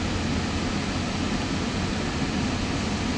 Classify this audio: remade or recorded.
recorded